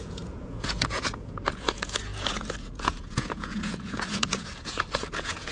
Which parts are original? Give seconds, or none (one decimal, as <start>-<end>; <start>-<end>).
none